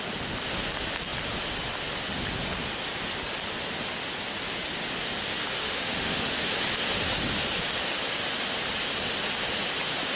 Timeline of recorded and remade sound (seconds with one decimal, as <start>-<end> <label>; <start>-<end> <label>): 0.0-5.6 recorded; 5.6-6.5 remade; 6.5-10.2 recorded